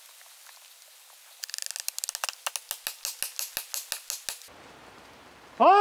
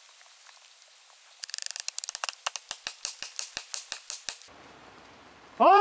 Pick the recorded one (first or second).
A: first